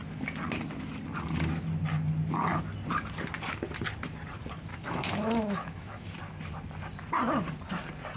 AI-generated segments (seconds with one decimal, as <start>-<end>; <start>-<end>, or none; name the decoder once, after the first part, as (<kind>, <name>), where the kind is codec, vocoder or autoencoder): 4.7-6.1 (autoencoder, DAC-VAE)